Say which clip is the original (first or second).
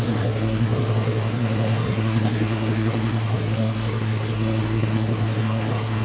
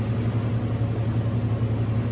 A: second